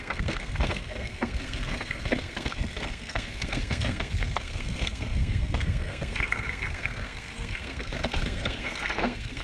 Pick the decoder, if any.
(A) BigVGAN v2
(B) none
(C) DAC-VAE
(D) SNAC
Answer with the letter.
D